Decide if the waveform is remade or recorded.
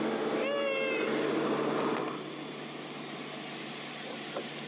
recorded